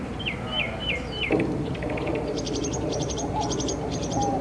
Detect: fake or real fake